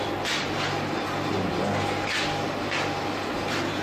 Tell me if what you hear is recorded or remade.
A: recorded